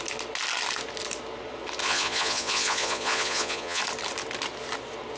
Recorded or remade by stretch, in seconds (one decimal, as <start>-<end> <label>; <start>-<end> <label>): 0.0-1.8 recorded; 1.8-3.8 remade; 3.8-5.2 recorded